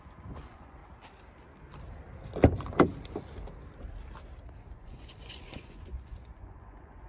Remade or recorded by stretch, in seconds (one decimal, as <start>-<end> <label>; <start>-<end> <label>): 0.0-0.8 remade; 0.8-4.7 recorded; 4.7-7.1 remade